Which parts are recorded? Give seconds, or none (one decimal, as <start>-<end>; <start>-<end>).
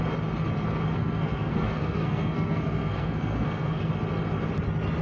0.0-0.9; 3.9-5.0